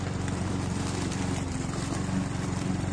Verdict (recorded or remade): remade